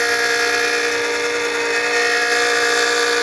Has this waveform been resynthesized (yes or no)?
no